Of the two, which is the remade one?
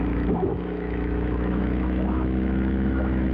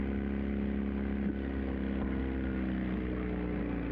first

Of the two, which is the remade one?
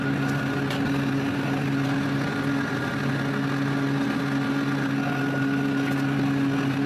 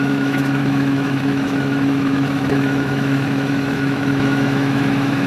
second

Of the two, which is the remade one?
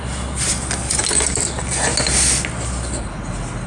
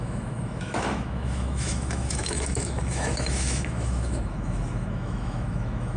second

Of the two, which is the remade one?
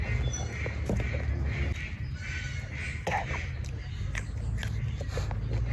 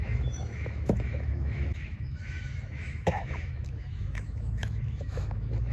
second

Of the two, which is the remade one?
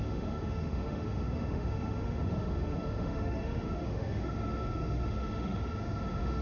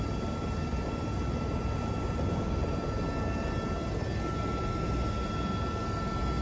first